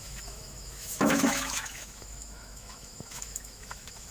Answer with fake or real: fake